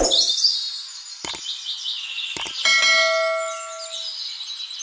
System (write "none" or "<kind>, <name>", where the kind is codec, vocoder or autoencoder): none